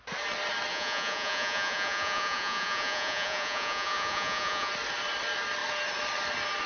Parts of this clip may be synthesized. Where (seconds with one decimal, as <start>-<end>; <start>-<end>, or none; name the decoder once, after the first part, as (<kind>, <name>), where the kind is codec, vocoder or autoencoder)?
0.7-4.7 (vocoder, Vocos)